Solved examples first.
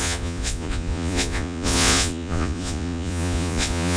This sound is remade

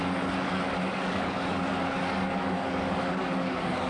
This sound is remade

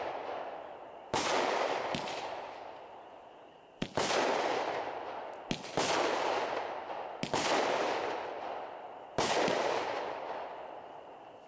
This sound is recorded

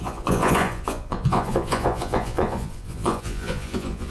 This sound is remade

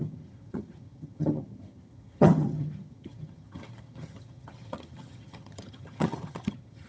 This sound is remade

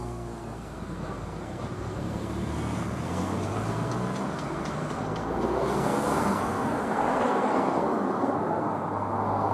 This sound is remade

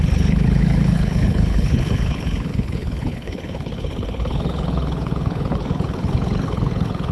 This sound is remade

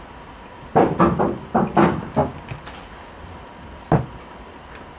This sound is recorded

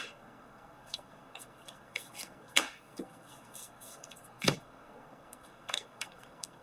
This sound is remade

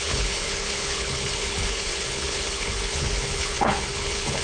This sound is remade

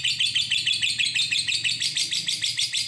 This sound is recorded